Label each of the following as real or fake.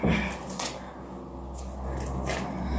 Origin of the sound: real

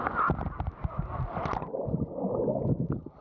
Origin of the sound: real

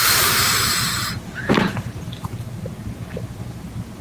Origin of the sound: fake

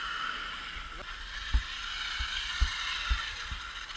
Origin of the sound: real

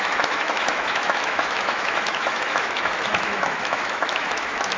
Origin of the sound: fake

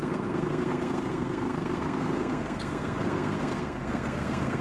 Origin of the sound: fake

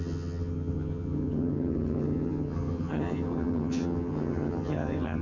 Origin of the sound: fake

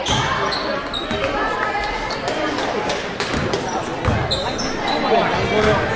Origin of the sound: real